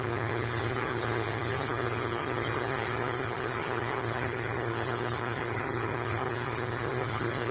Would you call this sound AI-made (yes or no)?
yes